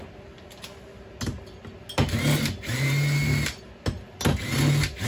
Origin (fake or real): real